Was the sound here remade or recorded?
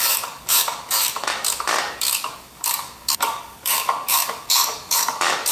remade